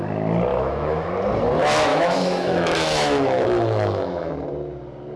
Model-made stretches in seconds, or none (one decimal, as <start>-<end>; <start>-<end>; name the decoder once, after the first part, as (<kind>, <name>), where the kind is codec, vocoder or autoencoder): 0.5-1.1 (autoencoder, DAC-VAE); 1.9-4.3